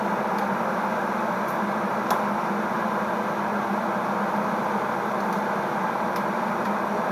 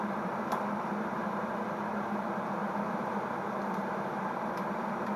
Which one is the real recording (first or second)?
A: first